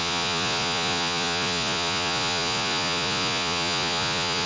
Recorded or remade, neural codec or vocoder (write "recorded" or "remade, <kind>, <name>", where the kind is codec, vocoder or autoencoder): remade, vocoder, Vocos